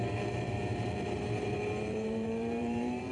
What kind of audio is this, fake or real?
fake